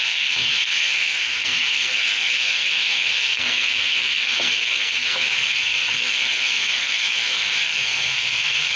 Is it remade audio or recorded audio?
remade